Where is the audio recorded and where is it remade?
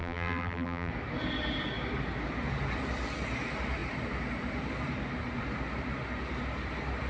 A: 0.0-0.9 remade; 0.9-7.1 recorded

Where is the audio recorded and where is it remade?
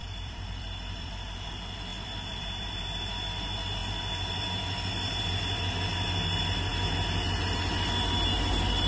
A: 0.0-1.1 remade; 1.1-1.9 recorded; 1.9-2.8 remade; 2.8-8.9 recorded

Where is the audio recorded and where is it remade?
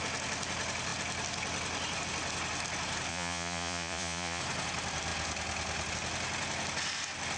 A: 0.0-3.1 recorded; 3.1-4.4 remade; 4.4-7.4 recorded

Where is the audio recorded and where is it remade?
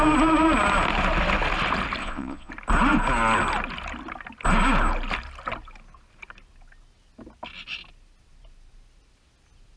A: 0.0-2.0 recorded; 2.0-2.5 remade; 2.5-9.8 recorded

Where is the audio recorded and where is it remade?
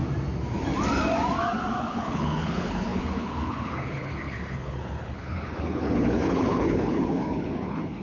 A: 0.0-1.8 recorded; 1.8-8.0 remade